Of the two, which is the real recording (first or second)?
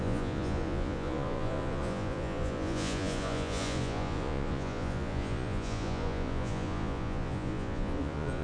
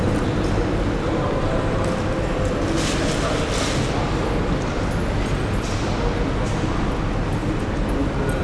second